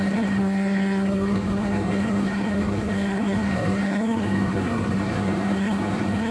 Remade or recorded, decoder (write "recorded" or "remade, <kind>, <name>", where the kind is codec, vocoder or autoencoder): remade, codec, SNAC